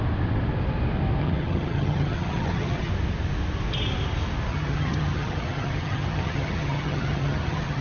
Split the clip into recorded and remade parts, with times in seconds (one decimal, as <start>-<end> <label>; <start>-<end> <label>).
0.0-1.2 recorded; 1.2-2.9 remade; 2.9-4.5 recorded; 4.5-7.8 remade